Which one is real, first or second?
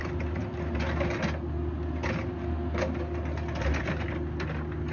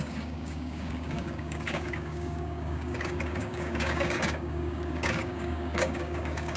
first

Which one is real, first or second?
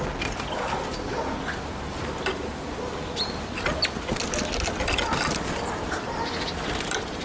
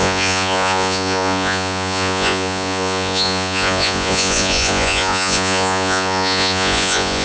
first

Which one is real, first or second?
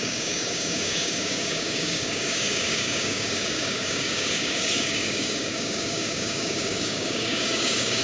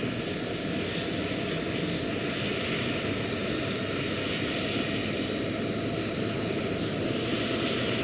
second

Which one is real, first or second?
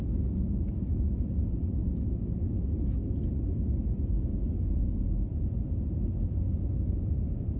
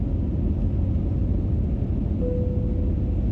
second